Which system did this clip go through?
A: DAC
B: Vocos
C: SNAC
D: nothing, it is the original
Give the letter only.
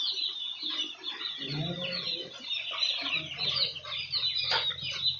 D